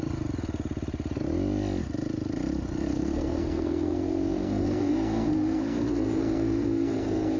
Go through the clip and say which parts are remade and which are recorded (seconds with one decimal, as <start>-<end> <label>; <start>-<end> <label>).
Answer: 0.0-2.9 recorded; 2.9-7.4 remade